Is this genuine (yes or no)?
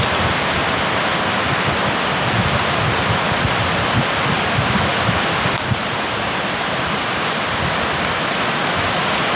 yes